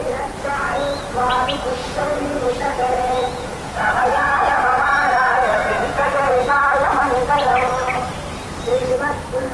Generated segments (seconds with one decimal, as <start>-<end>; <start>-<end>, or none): 1.8-4.9; 5.6-6.5